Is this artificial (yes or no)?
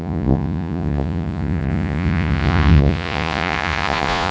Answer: yes